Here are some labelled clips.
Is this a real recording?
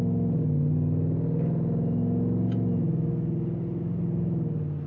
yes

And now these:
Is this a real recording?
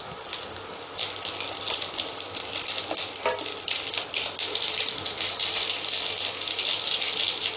yes